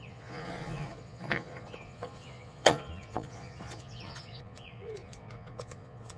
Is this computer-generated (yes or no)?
yes